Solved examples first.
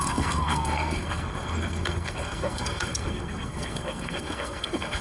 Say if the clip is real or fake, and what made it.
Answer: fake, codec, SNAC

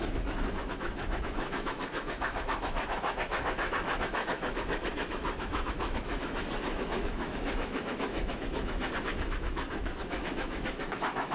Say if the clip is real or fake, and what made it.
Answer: fake, autoencoder, DAC-VAE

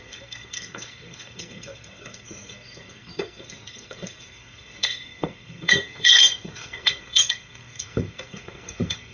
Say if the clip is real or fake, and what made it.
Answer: fake, codec, SNAC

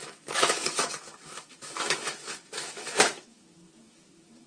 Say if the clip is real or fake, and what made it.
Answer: fake, autoencoder, DAC-VAE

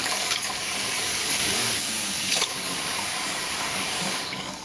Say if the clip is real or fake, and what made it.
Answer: fake, codec, DAC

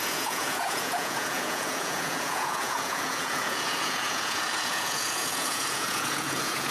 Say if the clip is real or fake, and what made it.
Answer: fake, vocoder, Vocos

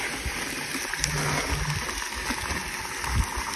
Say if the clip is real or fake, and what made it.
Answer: real